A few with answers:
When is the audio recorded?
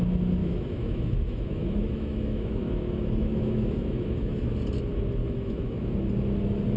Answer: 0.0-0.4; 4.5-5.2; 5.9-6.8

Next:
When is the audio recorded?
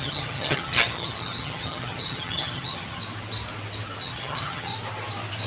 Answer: 3.0-4.0; 4.7-5.5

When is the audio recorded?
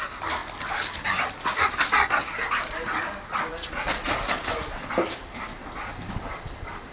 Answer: 0.0-6.9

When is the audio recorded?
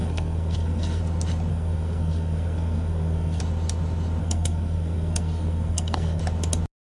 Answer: 1.0-1.5; 3.4-4.2; 6.2-6.8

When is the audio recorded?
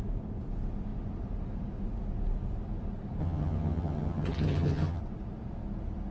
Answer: 0.0-3.2; 5.0-6.1